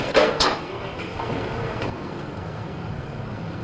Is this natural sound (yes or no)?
no